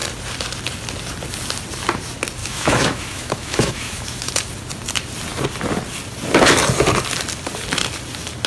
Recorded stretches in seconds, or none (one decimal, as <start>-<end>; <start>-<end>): 0.0-2.4; 4.3-8.5